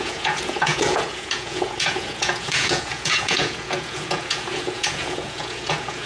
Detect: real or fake fake